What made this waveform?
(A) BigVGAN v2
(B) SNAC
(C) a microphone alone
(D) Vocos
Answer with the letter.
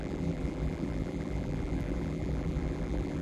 A